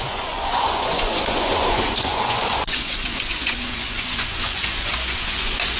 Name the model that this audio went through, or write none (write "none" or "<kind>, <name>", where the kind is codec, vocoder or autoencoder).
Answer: vocoder, Vocos